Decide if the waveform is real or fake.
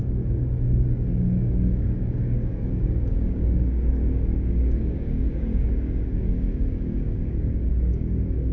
fake